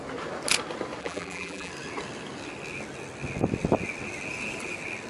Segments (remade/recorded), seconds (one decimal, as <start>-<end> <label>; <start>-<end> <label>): 0.0-1.0 recorded; 1.0-1.7 remade; 1.7-5.1 recorded